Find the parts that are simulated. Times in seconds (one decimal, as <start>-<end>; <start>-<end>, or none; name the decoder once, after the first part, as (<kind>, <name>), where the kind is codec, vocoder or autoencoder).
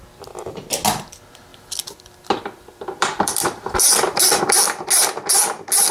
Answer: 1.5-4.4 (vocoder, BigVGAN v2)